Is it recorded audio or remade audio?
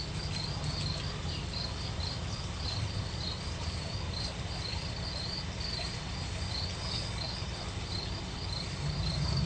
recorded